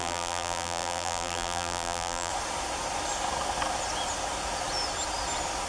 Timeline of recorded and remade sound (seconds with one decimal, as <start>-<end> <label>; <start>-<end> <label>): 0.0-2.3 remade; 2.3-5.7 recorded

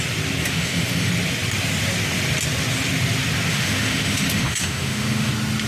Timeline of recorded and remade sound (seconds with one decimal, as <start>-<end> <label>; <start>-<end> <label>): 0.0-0.4 recorded; 0.4-1.1 remade; 1.1-3.5 recorded; 3.5-5.3 remade; 5.3-5.7 recorded

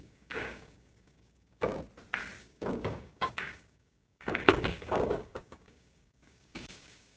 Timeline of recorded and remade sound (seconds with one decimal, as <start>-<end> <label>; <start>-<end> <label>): 0.0-1.7 remade; 1.7-2.4 recorded; 2.4-7.2 remade

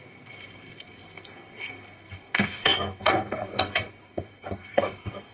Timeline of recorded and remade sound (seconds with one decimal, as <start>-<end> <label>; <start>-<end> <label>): 0.0-5.3 remade

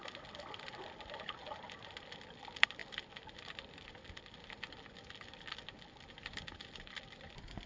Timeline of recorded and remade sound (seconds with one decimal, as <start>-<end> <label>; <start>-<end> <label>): 0.0-1.4 remade; 1.4-2.4 recorded; 2.4-7.7 remade